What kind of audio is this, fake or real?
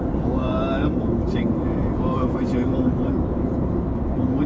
fake